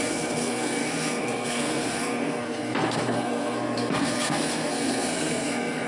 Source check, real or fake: fake